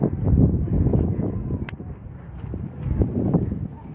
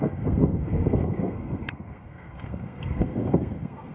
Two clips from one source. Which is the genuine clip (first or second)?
first